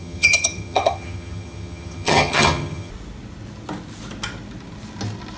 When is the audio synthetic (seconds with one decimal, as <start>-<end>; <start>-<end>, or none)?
0.0-2.9